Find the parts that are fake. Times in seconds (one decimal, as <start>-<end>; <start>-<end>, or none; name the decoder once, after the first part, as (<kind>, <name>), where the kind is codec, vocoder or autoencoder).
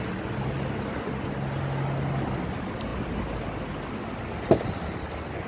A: none